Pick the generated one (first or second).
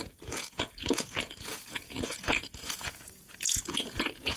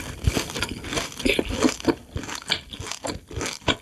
first